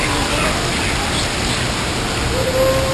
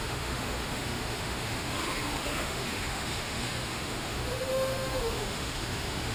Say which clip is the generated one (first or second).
second